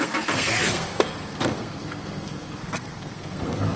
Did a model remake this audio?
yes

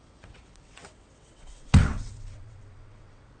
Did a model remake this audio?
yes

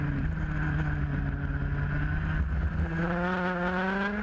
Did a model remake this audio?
no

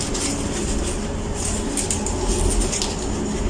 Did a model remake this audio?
no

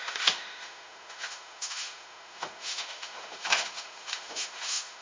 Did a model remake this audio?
yes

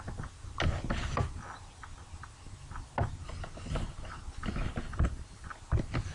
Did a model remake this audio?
no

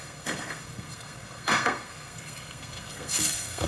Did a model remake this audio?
yes